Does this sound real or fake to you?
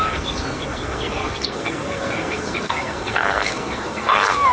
fake